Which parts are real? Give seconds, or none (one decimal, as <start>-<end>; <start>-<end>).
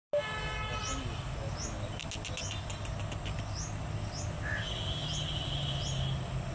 0.0-0.8; 1.4-6.5